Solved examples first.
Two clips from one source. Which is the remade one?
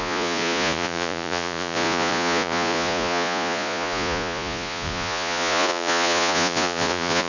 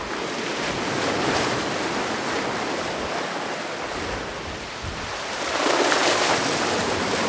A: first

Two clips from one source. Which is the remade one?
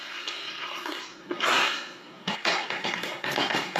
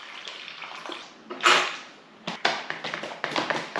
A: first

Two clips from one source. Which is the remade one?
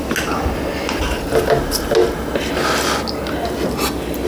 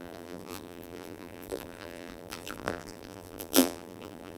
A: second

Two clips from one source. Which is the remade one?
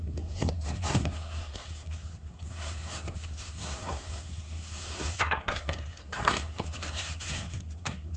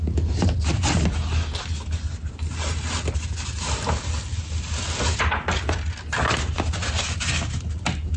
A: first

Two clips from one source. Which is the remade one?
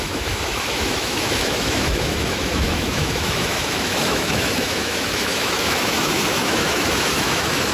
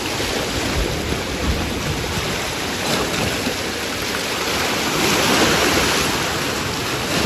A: first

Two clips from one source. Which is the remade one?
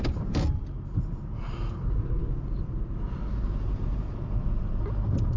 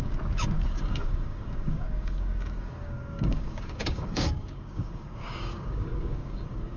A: second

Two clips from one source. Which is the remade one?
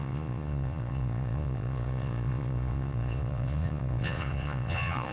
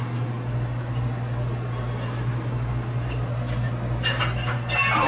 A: first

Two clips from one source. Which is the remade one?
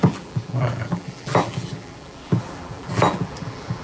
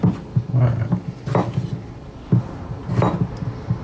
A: first